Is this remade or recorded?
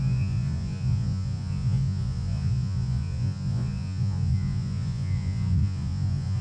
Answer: remade